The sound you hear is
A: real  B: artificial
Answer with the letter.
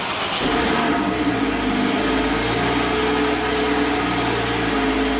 A